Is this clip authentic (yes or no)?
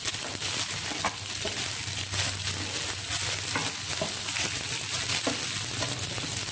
yes